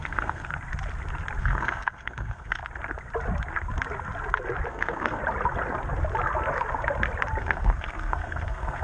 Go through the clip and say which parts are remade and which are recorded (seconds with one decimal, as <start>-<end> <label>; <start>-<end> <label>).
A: 0.0-0.5 remade; 0.5-1.4 recorded; 1.4-2.6 remade; 2.6-4.7 recorded; 4.7-5.2 remade; 5.2-7.4 recorded; 7.4-8.8 remade